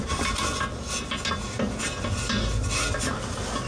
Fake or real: real